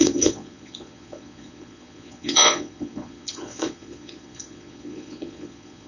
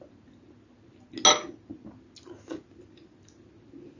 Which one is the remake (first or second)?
first